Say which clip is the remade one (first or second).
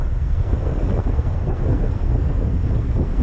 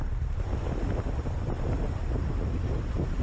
first